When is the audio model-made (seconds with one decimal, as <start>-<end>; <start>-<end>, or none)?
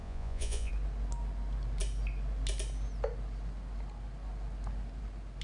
0.0-0.7